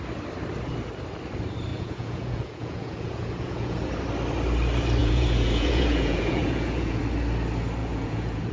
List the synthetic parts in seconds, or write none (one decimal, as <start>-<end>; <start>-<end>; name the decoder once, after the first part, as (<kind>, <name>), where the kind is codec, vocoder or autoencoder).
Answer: 1.7-3.9 (vocoder, Vocos); 5.0-7.0; 7.8-8.5